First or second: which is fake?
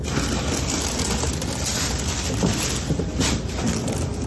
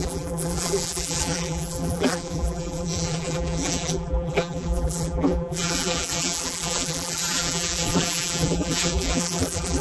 second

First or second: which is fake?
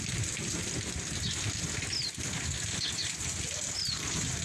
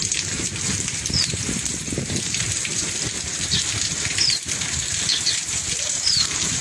second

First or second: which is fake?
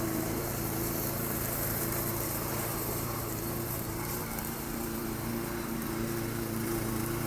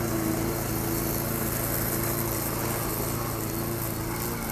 first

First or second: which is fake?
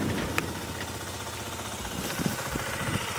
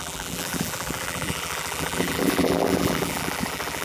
second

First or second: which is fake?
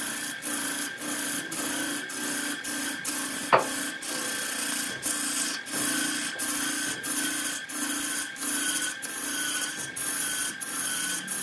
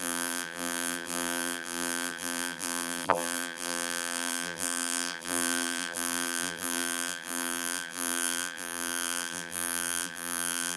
second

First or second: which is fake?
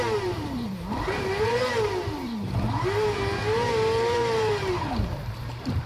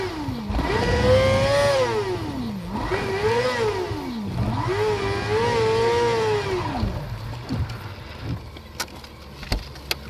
first